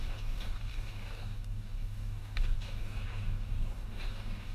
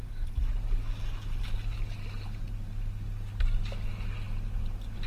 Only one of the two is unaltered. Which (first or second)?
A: second